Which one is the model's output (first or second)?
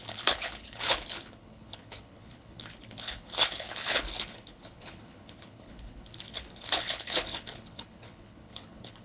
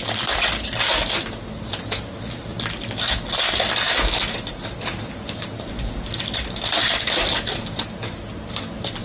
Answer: first